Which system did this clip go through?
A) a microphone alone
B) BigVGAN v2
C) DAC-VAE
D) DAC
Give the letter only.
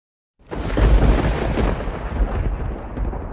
A